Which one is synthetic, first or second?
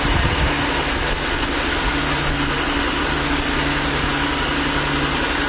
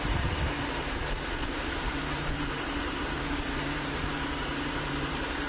second